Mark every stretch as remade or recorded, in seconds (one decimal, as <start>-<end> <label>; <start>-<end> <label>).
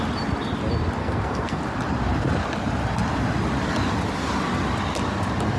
0.0-1.0 recorded; 1.0-1.6 remade; 1.6-5.6 recorded